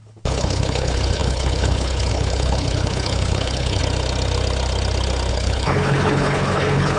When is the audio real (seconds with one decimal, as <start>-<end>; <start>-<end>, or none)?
3.8-5.3